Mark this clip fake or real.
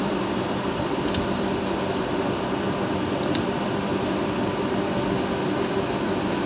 real